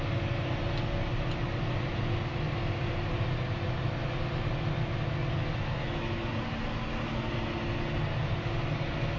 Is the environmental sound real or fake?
real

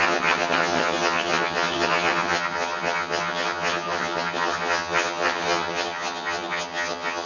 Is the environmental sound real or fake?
fake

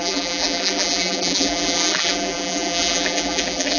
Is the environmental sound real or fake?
fake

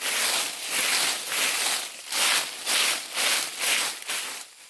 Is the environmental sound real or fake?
real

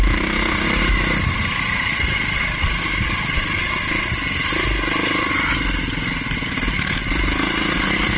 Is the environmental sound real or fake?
real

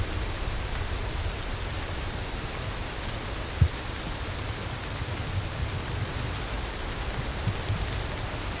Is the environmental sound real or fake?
real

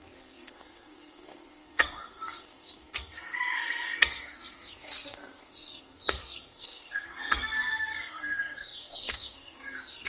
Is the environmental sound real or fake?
fake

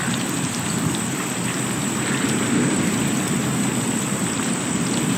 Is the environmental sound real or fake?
real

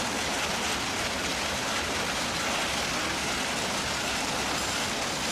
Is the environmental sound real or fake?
real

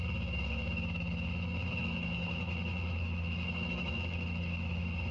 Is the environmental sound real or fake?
fake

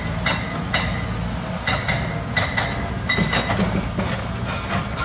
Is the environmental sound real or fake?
real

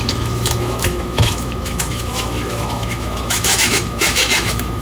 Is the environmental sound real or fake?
fake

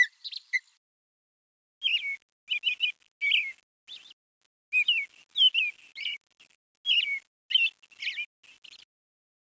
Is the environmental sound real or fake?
real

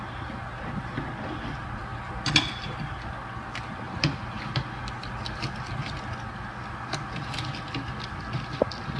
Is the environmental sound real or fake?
real